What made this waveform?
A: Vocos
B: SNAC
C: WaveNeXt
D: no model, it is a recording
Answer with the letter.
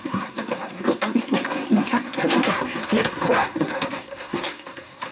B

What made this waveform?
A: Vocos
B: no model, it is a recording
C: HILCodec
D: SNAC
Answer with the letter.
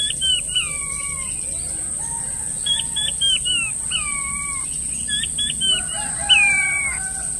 B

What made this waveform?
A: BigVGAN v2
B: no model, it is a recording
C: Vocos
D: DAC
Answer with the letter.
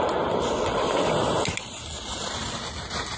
B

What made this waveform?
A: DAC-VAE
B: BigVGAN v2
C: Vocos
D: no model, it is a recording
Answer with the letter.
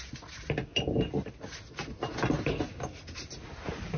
D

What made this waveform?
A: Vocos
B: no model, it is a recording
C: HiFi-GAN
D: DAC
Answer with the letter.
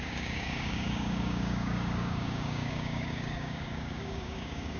D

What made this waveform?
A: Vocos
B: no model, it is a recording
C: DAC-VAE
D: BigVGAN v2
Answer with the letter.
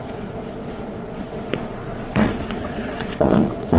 A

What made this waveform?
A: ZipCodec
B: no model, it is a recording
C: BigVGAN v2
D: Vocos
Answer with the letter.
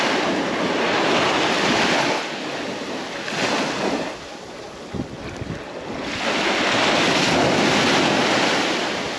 B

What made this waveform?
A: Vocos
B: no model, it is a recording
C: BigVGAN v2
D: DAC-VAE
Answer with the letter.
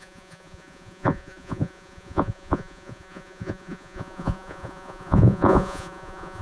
A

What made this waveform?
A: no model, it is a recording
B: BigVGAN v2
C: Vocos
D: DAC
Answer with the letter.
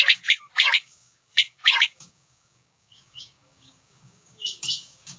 D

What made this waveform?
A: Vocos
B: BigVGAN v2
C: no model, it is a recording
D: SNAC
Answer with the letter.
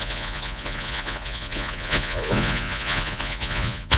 A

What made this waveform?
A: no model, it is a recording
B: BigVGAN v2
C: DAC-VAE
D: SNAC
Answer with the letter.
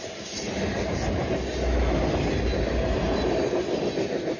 A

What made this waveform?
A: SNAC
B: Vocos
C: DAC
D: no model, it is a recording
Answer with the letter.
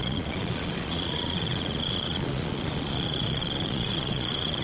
B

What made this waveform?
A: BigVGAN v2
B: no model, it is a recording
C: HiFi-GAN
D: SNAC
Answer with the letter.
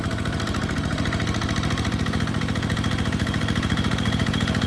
B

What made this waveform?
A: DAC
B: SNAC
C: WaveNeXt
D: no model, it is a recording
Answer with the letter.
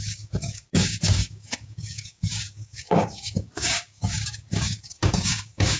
A